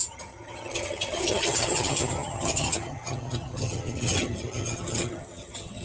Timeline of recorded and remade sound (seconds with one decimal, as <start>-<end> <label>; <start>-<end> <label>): 0.0-5.8 remade